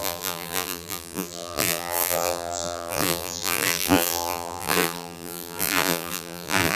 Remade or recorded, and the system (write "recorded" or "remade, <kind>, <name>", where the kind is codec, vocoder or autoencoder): remade, vocoder, BigVGAN v2